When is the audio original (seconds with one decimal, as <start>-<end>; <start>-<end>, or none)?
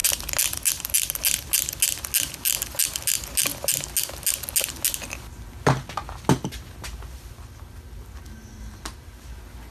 0.0-9.7